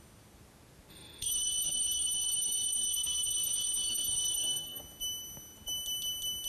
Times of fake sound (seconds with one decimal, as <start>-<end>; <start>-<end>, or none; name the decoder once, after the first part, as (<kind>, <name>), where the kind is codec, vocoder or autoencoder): 0.9-4.8 (codec, SNAC)